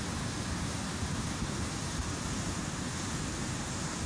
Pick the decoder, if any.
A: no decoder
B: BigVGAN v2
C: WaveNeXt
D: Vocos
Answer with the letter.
A